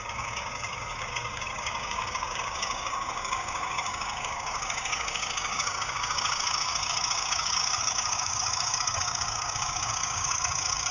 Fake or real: fake